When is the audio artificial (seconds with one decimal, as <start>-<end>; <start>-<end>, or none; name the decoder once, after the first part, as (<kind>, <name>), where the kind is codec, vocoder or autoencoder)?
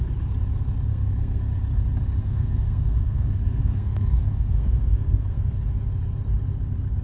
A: 0.9-1.4 (codec, SNAC); 2.2-5.5